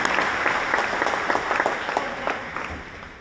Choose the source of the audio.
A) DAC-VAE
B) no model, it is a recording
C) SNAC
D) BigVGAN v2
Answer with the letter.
B